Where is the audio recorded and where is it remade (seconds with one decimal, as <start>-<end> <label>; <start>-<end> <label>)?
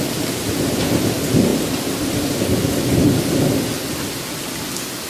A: 0.0-5.1 recorded